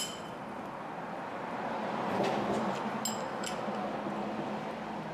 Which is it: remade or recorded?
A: recorded